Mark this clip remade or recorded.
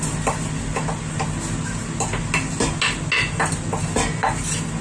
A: recorded